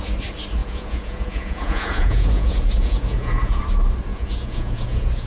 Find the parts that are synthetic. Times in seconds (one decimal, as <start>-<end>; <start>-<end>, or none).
0.6-3.6; 4.1-5.3